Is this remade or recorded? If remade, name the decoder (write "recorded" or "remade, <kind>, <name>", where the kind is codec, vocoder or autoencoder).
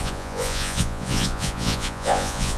remade, vocoder, Vocos